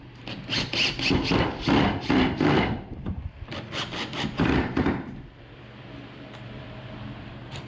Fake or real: fake